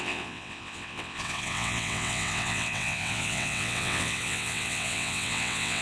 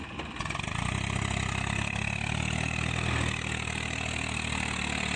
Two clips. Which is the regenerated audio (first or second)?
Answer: first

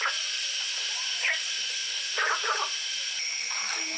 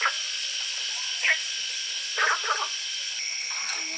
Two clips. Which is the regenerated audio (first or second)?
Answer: first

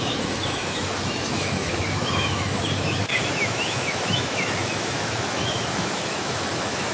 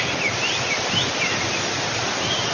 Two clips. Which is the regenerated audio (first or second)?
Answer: first